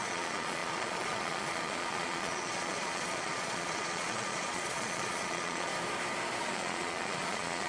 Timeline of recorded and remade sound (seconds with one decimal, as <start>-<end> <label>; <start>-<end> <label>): 0.0-5.7 remade; 5.7-6.4 recorded; 6.4-7.7 remade